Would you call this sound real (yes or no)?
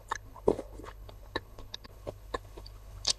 no